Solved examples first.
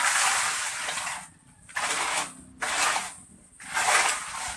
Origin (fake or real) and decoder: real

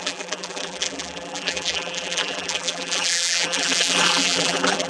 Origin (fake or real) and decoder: fake, vocoder, BigVGAN v2